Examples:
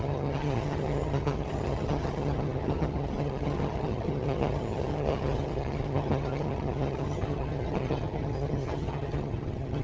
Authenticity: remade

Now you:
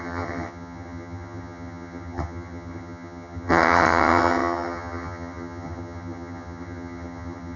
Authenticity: remade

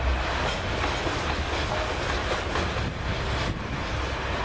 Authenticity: recorded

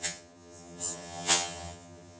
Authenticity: remade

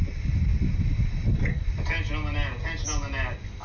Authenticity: recorded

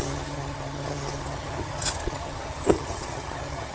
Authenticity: remade